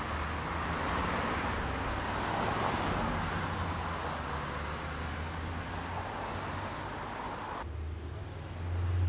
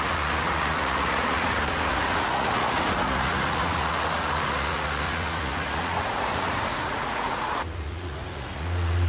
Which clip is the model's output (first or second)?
second